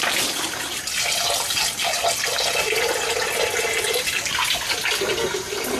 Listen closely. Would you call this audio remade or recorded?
recorded